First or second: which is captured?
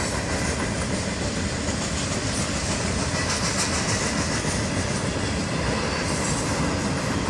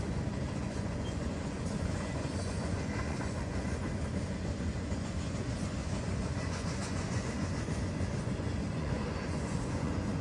first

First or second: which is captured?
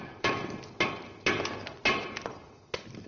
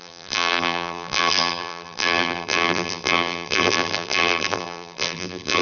first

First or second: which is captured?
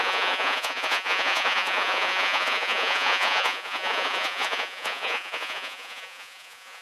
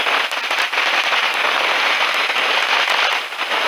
second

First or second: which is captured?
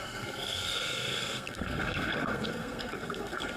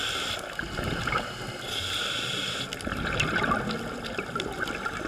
second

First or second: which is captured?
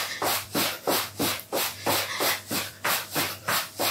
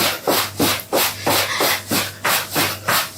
second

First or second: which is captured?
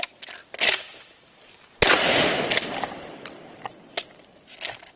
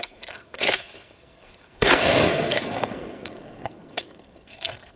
first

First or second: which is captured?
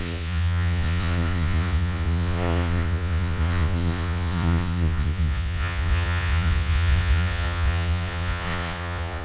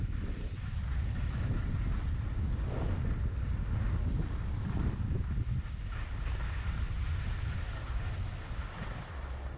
second